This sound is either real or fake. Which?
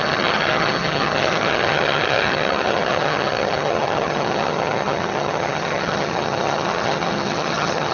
fake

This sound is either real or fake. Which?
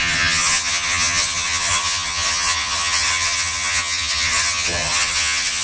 fake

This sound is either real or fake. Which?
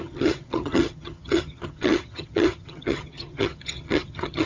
fake